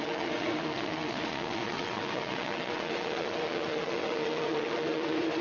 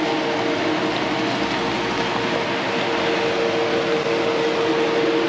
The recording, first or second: second